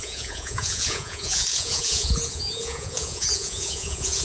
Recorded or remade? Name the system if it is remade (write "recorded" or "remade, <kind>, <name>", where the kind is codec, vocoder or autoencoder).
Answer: remade, vocoder, Vocos